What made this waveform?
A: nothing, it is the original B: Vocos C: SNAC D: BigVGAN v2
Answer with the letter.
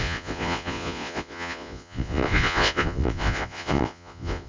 B